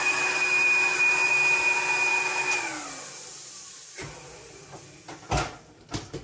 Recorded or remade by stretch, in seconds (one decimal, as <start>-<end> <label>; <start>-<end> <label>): 0.0-6.2 recorded